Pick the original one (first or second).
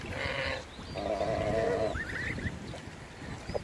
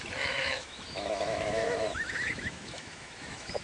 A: first